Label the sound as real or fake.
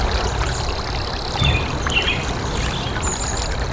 real